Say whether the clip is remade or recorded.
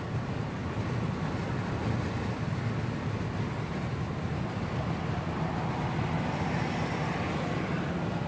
recorded